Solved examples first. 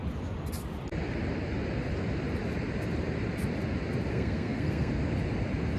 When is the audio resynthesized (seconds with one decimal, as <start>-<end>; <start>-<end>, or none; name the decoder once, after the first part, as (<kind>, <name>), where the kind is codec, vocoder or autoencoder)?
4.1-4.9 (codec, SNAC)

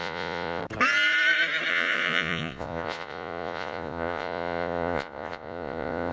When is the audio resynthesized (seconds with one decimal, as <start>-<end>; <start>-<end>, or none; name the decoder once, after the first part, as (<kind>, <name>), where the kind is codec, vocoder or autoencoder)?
0.0-0.6 (vocoder, Vocos); 1.7-6.1

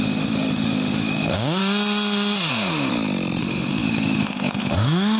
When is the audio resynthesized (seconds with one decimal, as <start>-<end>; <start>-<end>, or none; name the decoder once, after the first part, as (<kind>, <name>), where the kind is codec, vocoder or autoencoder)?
0.0-1.6 (autoencoder, DAC-VAE); 2.5-2.9; 3.4-5.2